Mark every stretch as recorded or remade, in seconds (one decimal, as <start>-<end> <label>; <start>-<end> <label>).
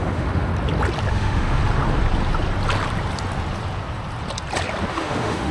0.0-0.5 remade; 0.5-1.1 recorded; 1.1-1.6 remade; 1.6-4.9 recorded; 4.9-5.5 remade